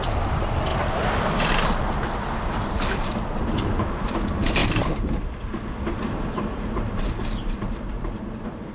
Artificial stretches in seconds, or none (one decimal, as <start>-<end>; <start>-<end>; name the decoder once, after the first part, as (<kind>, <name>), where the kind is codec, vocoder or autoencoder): 0.0-4.6 (vocoder, BigVGAN v2); 5.9-8.7